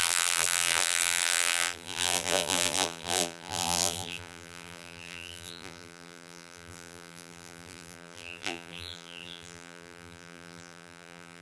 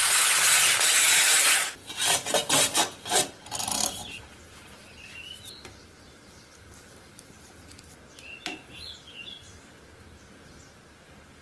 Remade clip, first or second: first